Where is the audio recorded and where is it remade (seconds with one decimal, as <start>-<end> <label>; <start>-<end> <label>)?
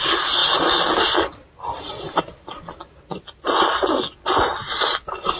0.0-5.4 recorded